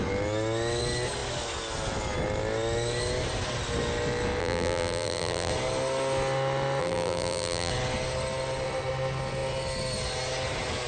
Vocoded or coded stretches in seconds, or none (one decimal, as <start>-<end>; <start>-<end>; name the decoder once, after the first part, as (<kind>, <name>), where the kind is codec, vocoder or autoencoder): 4.4-5.5 (vocoder, BigVGAN v2); 6.8-7.7